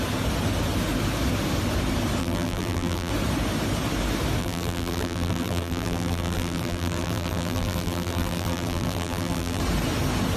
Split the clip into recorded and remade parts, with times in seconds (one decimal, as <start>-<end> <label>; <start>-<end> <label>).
0.0-2.2 recorded; 2.2-3.1 remade; 3.1-4.4 recorded; 4.4-9.6 remade; 9.6-10.4 recorded